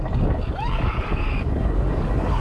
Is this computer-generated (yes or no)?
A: yes